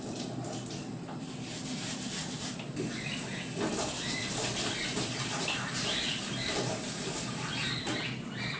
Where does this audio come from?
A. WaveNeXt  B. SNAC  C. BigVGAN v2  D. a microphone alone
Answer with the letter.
C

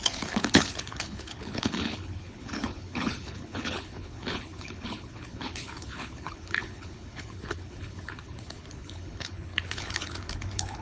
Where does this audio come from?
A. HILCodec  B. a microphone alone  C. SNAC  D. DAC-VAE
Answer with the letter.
A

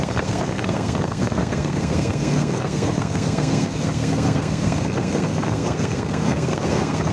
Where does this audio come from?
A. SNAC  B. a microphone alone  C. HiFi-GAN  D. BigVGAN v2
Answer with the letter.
A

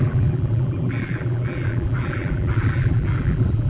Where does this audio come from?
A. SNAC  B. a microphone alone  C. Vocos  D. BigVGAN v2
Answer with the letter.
D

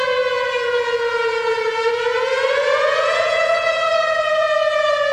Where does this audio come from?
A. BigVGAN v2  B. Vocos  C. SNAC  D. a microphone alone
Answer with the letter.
B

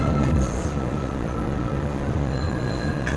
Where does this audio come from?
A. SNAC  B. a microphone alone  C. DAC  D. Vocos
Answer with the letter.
D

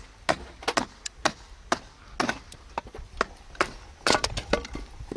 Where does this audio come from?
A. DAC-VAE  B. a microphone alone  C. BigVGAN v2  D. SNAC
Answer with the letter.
B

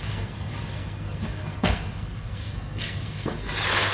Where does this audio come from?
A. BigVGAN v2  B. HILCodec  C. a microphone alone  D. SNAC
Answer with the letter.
D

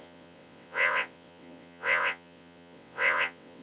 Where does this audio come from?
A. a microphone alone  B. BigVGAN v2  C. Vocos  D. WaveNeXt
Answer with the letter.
D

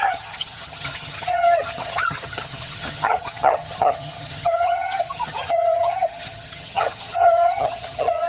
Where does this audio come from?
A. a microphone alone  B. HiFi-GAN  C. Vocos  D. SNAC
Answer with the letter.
B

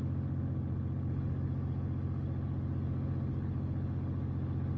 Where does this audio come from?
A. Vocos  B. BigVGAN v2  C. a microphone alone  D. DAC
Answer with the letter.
C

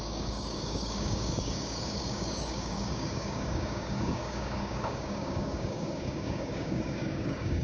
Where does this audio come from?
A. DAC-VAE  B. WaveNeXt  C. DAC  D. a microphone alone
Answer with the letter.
C